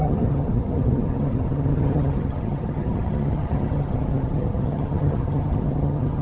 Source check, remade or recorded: remade